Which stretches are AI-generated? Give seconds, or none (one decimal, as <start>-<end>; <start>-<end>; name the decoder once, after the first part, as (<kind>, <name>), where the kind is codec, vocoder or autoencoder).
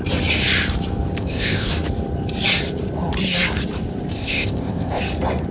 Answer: 1.2-1.7 (codec, ZipCodec); 4.1-5.0